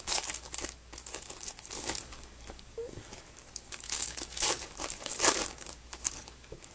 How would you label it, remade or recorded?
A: remade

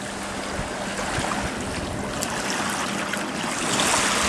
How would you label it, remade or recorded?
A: recorded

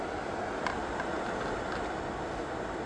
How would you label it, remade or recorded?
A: recorded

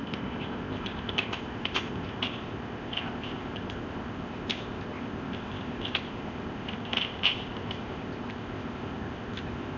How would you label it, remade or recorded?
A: remade